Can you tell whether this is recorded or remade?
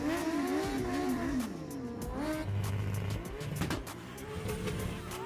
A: recorded